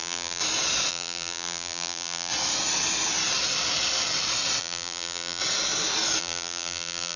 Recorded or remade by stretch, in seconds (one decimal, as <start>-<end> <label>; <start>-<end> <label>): 0.0-0.4 remade; 0.4-0.9 recorded; 0.9-2.3 remade; 2.3-4.6 recorded; 4.6-5.4 remade; 5.4-6.2 recorded; 6.2-7.2 remade